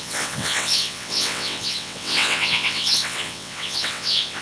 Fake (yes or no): yes